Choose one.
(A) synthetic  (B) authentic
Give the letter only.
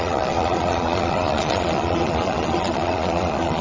A